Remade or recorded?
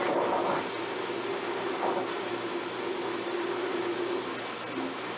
recorded